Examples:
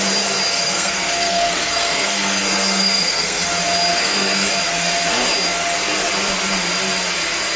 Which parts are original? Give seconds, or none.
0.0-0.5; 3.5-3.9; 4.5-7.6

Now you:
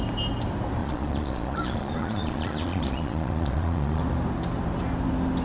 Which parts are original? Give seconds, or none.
0.0-0.8; 4.0-5.4

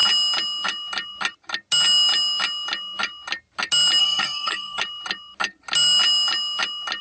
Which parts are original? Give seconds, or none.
0.0-4.0; 4.8-7.0